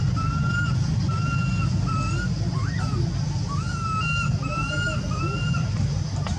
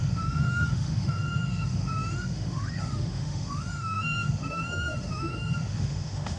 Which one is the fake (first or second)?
second